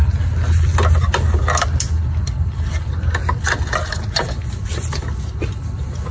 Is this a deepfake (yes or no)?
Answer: no